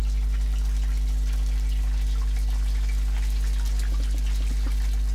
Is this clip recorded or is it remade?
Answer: recorded